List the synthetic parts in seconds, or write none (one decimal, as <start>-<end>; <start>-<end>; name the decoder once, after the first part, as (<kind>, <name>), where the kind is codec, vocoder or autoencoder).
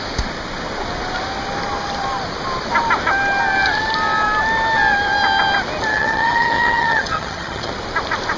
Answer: 5.9-7.7 (vocoder, HiFi-GAN)